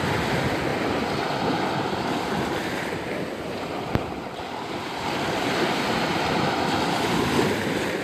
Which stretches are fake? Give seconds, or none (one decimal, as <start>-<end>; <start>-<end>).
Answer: 0.7-4.4; 6.1-7.2